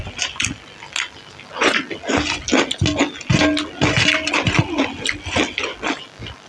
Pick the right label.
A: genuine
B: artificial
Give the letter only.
A